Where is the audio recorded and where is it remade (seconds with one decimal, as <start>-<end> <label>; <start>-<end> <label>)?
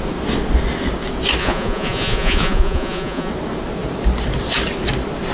0.0-1.4 recorded; 1.4-3.3 remade; 3.3-5.3 recorded